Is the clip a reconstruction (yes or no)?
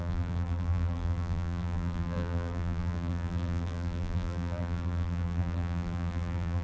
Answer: yes